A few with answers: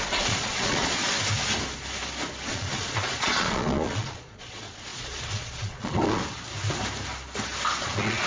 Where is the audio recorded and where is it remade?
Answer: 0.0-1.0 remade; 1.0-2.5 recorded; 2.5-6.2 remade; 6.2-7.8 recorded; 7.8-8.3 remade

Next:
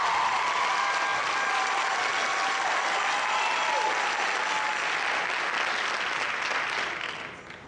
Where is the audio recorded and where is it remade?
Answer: 0.0-7.7 recorded

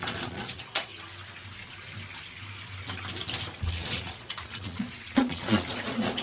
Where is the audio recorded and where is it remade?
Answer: 0.0-0.9 remade; 0.9-3.6 recorded; 3.6-6.2 remade

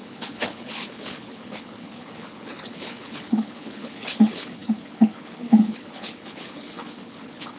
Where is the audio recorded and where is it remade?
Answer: 0.0-7.6 remade

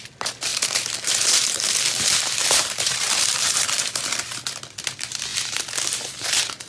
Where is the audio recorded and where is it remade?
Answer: 0.0-0.5 recorded; 0.5-4.0 remade; 4.0-6.7 recorded

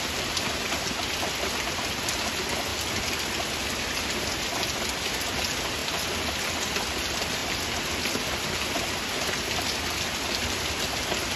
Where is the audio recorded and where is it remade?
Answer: 0.0-11.4 recorded

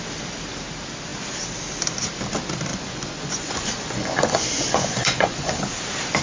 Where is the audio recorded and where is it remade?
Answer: 0.0-2.7 recorded; 2.7-5.5 remade; 5.5-6.2 recorded